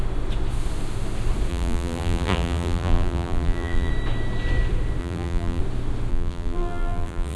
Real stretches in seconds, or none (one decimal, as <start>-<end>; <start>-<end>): 0.0-1.5; 3.9-5.0; 5.6-6.1